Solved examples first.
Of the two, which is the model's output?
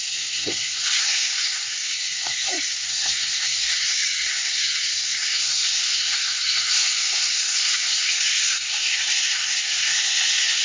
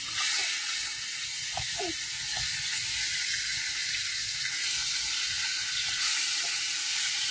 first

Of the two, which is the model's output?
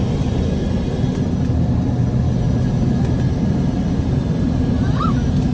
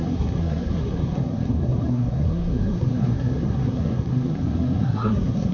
second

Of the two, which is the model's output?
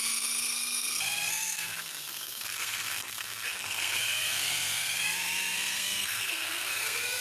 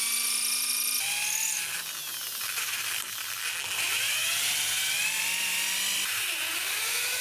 first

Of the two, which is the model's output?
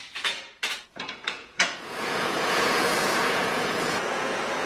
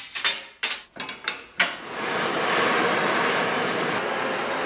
first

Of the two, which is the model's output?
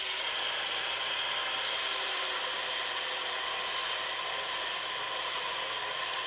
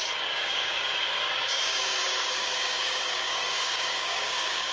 second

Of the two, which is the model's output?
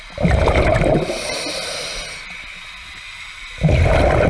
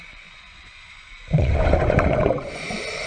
second